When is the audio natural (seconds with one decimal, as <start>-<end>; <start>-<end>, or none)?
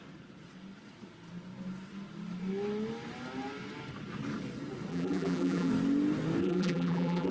0.0-4.9; 5.7-6.4